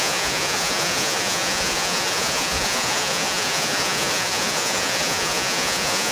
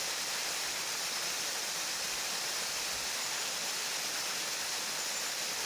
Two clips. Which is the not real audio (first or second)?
first